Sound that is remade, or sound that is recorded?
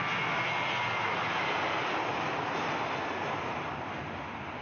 recorded